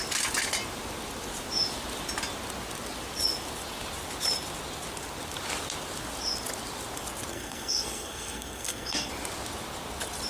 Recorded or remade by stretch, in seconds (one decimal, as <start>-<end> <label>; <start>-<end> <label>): 0.0-7.3 recorded; 7.3-9.1 remade; 9.1-10.3 recorded